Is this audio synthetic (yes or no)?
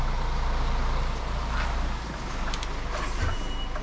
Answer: no